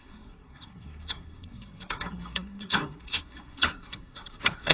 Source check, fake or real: fake